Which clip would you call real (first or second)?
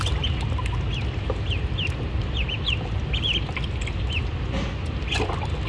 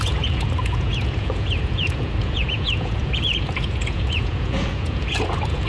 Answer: first